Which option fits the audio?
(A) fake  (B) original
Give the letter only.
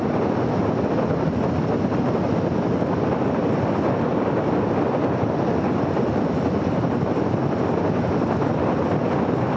B